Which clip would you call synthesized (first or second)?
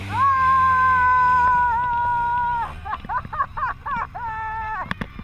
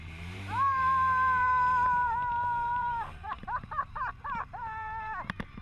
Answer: second